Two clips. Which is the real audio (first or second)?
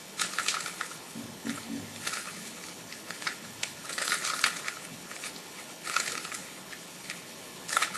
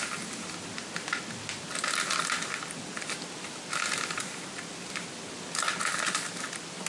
second